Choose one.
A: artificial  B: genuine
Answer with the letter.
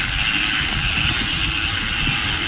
B